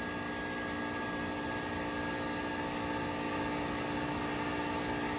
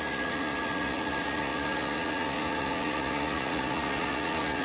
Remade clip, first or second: second